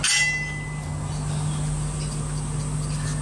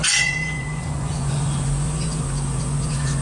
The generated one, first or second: second